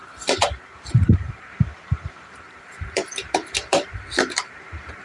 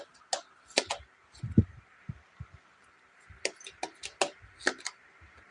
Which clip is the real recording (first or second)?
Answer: second